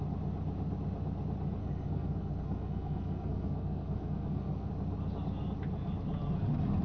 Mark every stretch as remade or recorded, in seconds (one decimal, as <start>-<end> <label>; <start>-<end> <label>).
0.0-1.6 recorded; 1.6-4.7 remade; 4.7-6.8 recorded